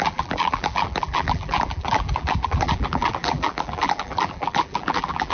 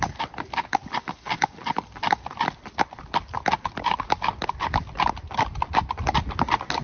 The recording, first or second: second